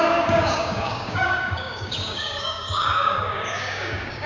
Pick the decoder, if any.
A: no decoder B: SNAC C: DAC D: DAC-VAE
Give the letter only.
C